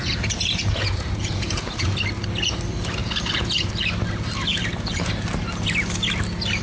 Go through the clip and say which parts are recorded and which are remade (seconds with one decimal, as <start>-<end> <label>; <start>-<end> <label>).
0.0-2.0 remade; 2.0-3.0 recorded; 3.0-3.7 remade; 3.7-4.5 recorded; 4.5-5.1 remade; 5.1-6.6 recorded